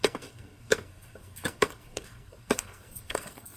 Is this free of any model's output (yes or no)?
no